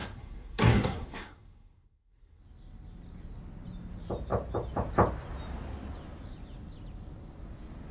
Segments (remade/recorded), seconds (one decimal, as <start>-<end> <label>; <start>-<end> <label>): 0.0-2.4 remade; 2.4-7.9 recorded